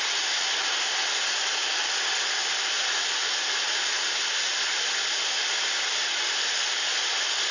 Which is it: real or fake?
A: real